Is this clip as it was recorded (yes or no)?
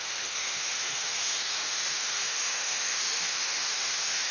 no